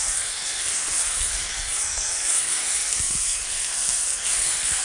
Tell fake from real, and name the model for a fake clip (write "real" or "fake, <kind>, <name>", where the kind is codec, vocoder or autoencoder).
fake, codec, SNAC